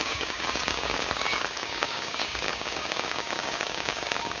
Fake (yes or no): yes